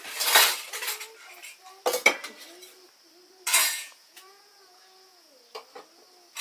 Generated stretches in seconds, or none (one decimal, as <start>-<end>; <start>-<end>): 3.6-5.3